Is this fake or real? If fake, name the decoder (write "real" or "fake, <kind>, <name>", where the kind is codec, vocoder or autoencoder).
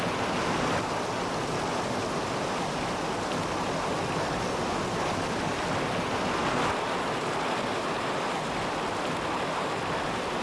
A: real